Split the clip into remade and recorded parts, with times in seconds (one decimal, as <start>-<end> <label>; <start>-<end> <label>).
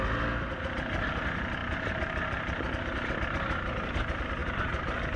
0.0-1.6 recorded; 1.6-3.3 remade; 3.3-5.2 recorded